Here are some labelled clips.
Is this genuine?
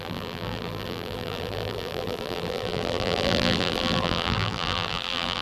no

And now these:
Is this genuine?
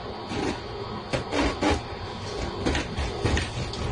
yes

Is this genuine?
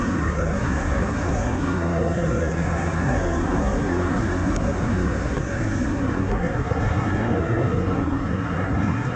no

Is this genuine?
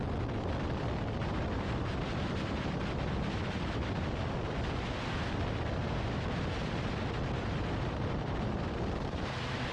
no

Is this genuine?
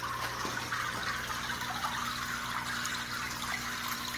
yes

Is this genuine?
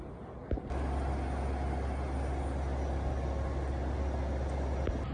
yes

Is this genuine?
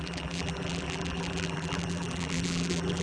no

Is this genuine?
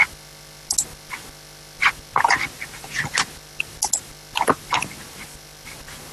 yes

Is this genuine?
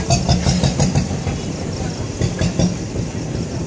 yes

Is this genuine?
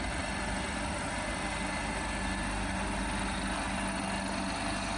yes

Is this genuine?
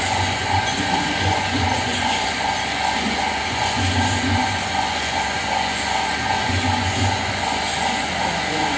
no